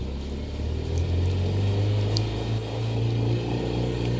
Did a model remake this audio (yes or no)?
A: no